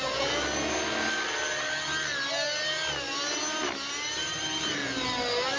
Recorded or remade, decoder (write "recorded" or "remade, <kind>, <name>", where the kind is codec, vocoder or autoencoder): recorded